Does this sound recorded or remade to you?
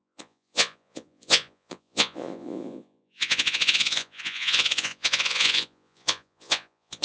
remade